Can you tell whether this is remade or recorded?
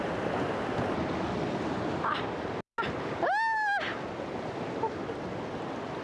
recorded